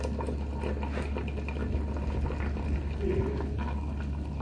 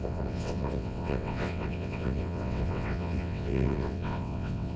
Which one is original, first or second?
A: first